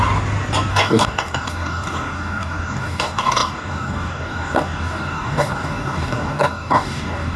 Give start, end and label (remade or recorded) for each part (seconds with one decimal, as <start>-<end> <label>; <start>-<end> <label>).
0.0-0.7 recorded; 0.7-7.4 remade